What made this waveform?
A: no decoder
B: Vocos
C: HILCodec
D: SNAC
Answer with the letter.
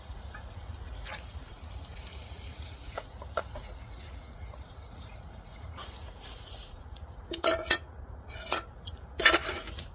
B